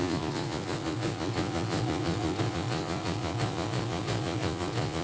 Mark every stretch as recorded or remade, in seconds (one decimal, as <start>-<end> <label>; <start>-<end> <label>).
0.0-5.0 remade